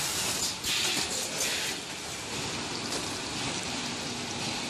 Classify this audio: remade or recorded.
recorded